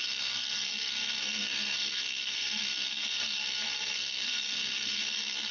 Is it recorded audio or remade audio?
remade